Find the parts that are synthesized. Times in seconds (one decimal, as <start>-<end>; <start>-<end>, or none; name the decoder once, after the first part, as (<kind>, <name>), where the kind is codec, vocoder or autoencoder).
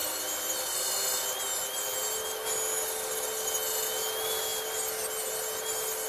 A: 0.0-1.4 (vocoder, BigVGAN v2)